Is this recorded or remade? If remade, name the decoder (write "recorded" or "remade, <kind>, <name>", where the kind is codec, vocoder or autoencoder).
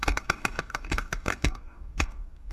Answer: remade, codec, DAC